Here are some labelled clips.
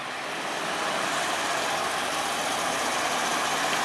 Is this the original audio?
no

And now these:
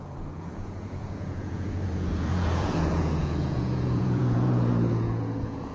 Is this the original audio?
no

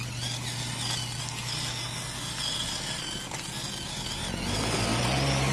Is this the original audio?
yes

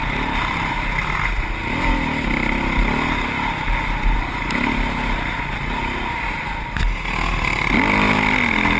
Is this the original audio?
yes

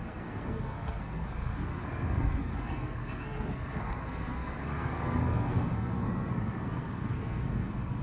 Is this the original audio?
no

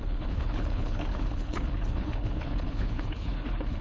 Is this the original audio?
no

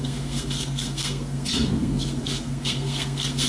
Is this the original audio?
no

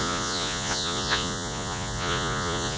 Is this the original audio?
no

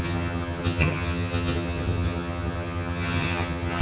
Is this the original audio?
no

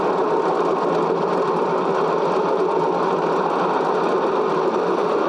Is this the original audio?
yes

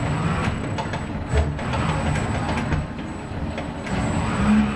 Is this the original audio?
yes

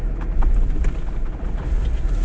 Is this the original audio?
yes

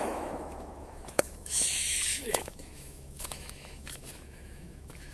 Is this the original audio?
no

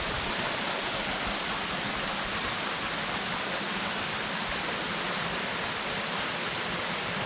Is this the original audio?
yes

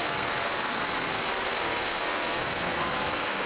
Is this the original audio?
no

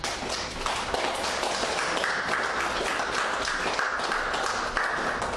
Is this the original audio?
yes